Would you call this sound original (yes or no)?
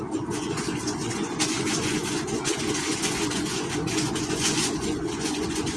no